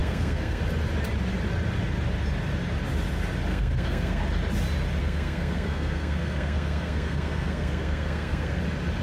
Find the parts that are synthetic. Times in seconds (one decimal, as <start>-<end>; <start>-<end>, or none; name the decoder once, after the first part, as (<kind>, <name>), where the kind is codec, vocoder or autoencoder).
0.0-0.6 (codec, SNAC); 3.5-4.2; 5.0-8.6